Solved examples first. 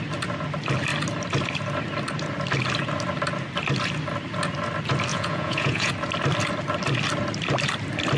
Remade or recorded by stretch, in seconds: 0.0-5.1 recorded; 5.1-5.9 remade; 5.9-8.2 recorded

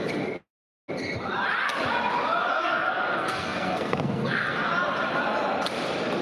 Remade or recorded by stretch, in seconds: 0.0-2.5 recorded; 2.5-4.7 remade; 4.7-6.2 recorded

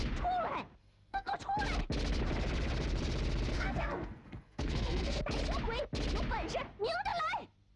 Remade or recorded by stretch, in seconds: 0.0-0.8 recorded; 0.8-1.3 remade; 1.3-3.5 recorded; 3.5-5.2 remade; 5.2-7.8 recorded

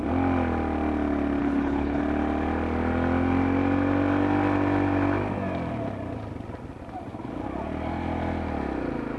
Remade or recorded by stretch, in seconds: 0.0-1.4 recorded; 1.4-2.0 remade; 2.0-9.2 recorded

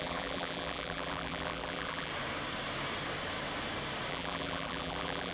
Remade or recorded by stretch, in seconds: 0.0-2.1 remade; 2.1-4.1 recorded; 4.1-5.3 remade

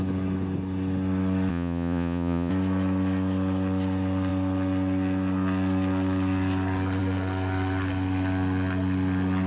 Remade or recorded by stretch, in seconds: 0.0-1.5 recorded; 1.5-2.5 remade; 2.5-9.5 recorded